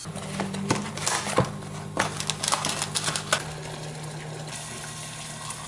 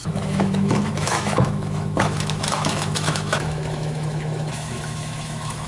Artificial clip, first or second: second